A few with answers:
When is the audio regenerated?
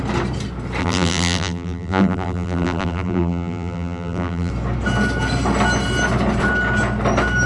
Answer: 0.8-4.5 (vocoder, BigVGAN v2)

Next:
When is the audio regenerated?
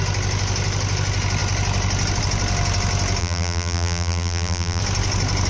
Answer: 3.2-4.8 (vocoder, BigVGAN v2)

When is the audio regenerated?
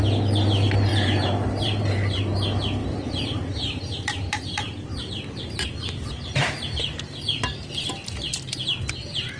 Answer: 0.9-2.2 (vocoder, BigVGAN v2); 2.8-6.5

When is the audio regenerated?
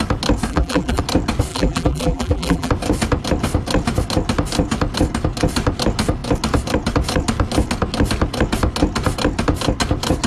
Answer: 0.5-1.0 (vocoder, BigVGAN v2); 1.5-2.7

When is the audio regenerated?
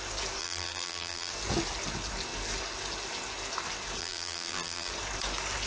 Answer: 0.4-1.3 (vocoder, BigVGAN v2); 4.0-4.9